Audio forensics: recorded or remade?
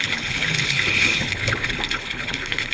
remade